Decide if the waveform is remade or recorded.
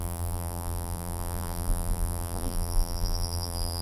remade